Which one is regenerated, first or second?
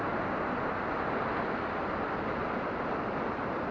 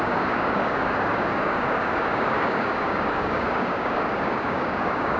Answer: second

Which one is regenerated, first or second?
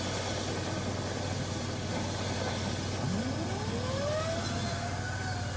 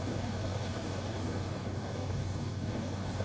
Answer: second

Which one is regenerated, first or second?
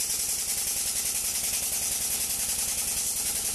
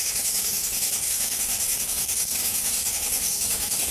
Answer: second